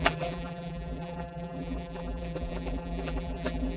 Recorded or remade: remade